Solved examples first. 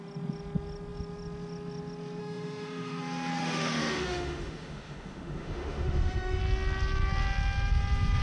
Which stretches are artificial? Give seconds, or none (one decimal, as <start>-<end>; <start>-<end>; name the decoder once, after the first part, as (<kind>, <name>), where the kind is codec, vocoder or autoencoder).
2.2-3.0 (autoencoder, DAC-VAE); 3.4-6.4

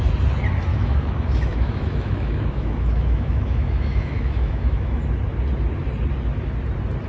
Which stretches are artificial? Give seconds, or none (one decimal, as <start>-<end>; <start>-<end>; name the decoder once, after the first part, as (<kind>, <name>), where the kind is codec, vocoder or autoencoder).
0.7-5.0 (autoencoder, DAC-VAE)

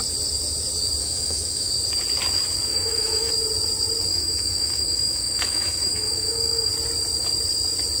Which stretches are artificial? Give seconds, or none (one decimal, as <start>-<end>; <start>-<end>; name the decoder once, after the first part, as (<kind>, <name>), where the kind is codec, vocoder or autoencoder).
1.0-1.7 (autoencoder, DAC-VAE); 2.7-3.3; 4.1-6.7

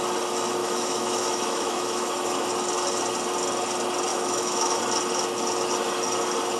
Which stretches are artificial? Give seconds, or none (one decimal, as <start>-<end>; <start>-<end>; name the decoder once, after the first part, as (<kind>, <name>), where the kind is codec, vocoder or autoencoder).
0.6-2.5 (autoencoder, DAC-VAE); 4.1-4.8

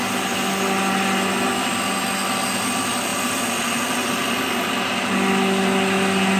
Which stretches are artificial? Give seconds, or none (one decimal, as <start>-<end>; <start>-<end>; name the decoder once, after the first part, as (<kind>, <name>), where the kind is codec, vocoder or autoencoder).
none

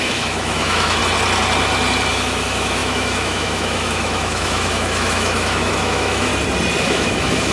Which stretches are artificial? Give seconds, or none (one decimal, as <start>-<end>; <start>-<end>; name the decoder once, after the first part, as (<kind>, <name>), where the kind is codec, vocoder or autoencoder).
0.0-1.0 (autoencoder, DAC-VAE); 2.1-6.3; 6.8-7.5

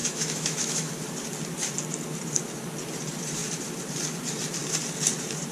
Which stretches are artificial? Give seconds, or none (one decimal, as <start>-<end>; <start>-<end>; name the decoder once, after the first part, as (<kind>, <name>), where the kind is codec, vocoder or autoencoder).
0.0-0.9 (autoencoder, DAC-VAE)

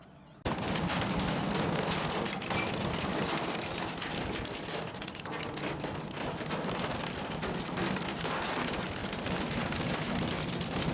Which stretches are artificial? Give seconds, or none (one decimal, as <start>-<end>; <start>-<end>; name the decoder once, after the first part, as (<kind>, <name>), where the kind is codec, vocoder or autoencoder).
none